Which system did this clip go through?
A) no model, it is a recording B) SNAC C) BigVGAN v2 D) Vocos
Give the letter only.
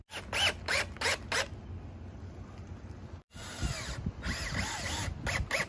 A